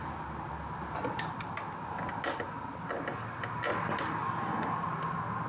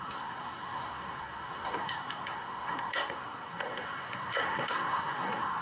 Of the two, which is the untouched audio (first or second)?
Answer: first